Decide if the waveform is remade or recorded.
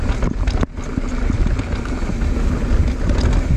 recorded